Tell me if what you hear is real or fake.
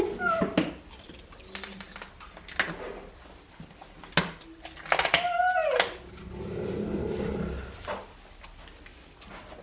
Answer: real